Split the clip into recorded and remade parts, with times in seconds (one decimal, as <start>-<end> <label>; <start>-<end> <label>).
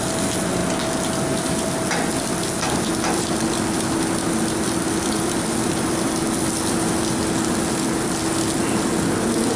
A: 0.0-9.6 recorded